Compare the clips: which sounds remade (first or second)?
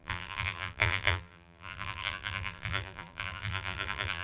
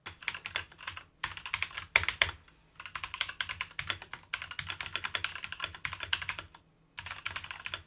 first